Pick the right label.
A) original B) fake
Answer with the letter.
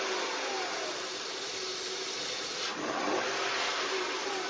A